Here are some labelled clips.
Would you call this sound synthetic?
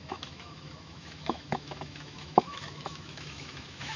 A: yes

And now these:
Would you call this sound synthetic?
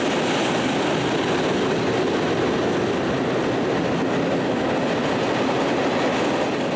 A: no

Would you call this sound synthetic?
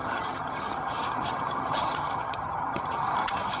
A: yes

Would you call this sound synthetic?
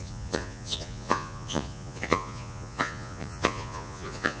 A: yes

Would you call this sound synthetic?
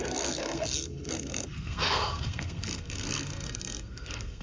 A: yes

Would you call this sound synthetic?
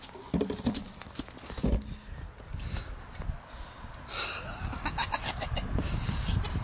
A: no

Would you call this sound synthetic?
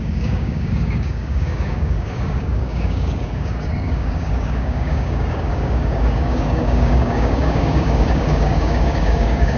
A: yes